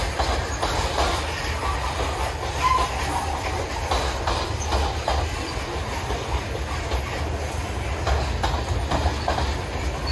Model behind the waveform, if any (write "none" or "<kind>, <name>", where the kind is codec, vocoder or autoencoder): none